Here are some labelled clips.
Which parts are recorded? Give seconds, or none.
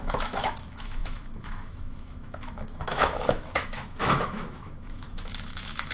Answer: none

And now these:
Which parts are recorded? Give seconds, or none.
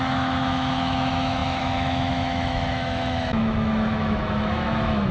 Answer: none